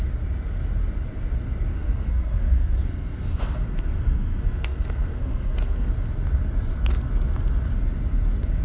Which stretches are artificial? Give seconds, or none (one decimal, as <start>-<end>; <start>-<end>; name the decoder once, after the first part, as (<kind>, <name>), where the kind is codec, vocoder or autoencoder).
1.7-5.9 (codec, SNAC)